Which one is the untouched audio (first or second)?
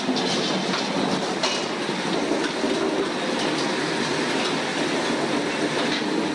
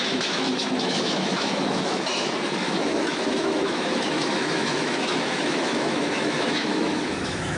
first